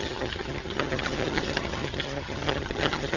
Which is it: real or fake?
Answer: fake